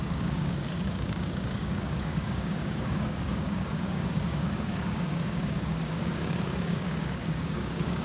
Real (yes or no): no